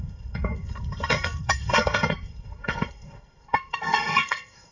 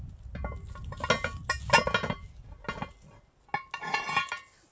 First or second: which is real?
second